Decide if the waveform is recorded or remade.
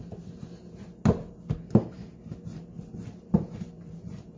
recorded